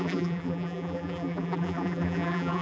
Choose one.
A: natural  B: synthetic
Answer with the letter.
B